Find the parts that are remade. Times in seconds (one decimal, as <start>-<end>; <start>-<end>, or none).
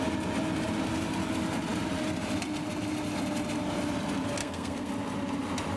4.4-4.9